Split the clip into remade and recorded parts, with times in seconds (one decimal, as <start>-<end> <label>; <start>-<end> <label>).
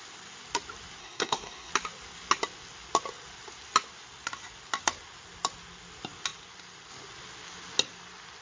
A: 0.0-1.0 recorded; 1.0-1.7 remade; 1.7-8.4 recorded